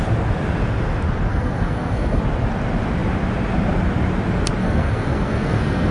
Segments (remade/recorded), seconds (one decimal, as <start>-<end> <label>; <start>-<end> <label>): 0.0-1.3 recorded; 1.3-2.2 remade; 2.2-4.6 recorded; 4.6-5.9 remade